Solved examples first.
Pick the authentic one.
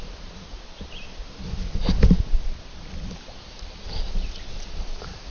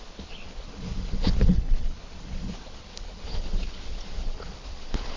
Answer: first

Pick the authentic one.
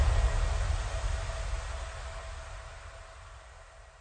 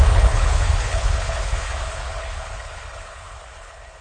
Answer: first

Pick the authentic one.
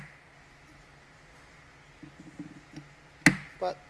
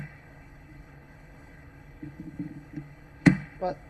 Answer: first